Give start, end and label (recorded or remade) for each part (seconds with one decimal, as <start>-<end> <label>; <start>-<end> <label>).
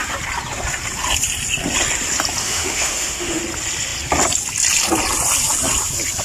0.0-2.4 recorded; 2.4-3.4 remade; 3.4-6.2 recorded